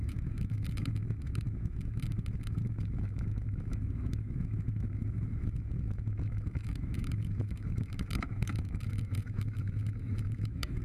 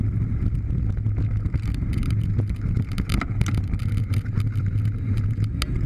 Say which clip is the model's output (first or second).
first